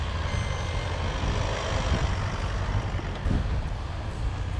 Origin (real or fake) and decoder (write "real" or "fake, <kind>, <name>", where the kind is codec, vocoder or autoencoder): real